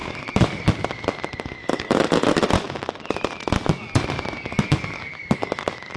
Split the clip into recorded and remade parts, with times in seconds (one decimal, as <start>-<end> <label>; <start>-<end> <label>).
0.0-0.6 remade; 0.6-1.6 recorded; 1.6-2.4 remade; 2.4-4.5 recorded; 4.5-6.0 remade